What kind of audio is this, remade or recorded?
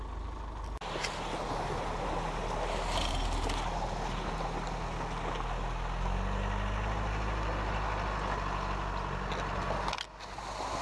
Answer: recorded